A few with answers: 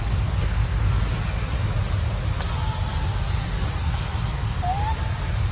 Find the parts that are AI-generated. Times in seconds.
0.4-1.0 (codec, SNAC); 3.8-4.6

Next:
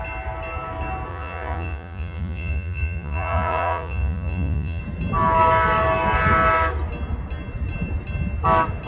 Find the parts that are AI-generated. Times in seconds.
1.1-4.8 (vocoder, Vocos)

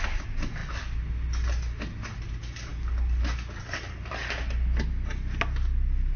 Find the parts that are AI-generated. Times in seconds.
none

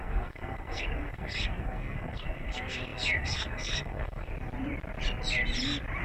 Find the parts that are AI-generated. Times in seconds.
0.0-4.3 (codec, SNAC)

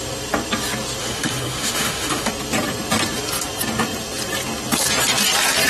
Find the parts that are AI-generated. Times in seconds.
1.0-2.3 (autoencoder, DAC-VAE)